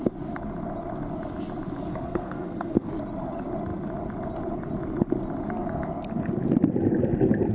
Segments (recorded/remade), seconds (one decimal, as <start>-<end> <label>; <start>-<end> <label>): 0.0-1.9 recorded; 1.9-2.9 remade; 2.9-7.5 recorded